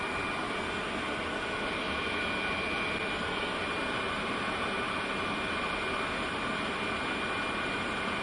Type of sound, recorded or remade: recorded